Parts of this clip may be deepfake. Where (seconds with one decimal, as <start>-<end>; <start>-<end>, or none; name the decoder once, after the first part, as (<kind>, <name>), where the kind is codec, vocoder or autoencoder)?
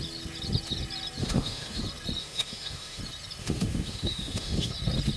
1.2-1.8 (autoencoder, DAC-VAE); 2.2-3.0; 3.4-4.7